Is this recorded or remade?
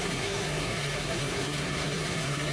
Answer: remade